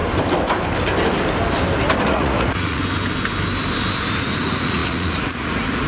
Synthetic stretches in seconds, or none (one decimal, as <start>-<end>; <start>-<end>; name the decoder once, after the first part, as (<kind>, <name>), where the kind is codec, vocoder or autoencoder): 2.0-2.8 (vocoder, Vocos); 4.2-5.9